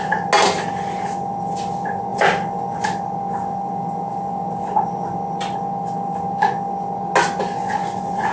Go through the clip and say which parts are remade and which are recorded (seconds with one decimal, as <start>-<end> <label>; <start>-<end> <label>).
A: 0.0-8.3 recorded